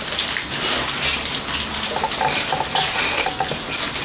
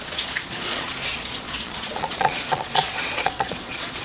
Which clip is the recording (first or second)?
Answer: first